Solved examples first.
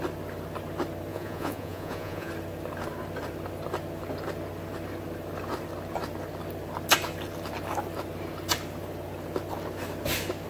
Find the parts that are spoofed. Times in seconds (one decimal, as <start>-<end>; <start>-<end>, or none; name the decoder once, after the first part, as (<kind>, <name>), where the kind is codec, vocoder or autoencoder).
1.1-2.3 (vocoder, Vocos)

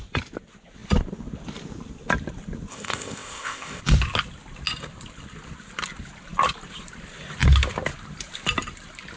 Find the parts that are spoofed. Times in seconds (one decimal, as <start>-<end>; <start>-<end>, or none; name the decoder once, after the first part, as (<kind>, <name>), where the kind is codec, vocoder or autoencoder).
2.7-3.8 (codec, ZipCodec)

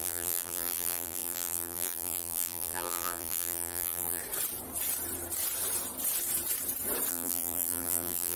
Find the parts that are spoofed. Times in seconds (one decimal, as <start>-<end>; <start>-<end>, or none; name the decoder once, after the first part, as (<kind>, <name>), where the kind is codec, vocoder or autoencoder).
0.0-4.2 (vocoder, BigVGAN v2); 7.1-8.4